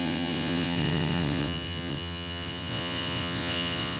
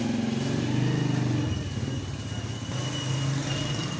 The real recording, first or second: second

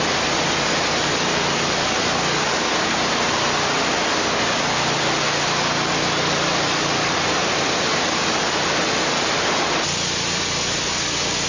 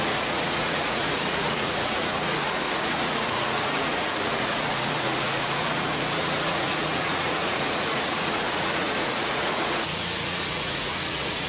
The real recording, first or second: first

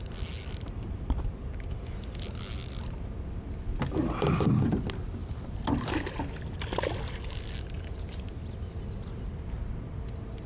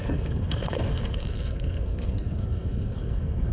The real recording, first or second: first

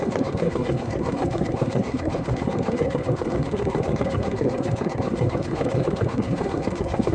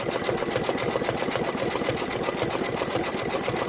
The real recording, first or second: second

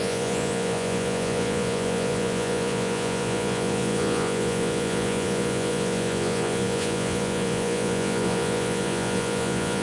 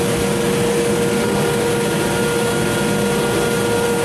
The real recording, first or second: second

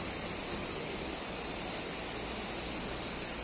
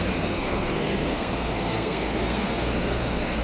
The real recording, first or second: first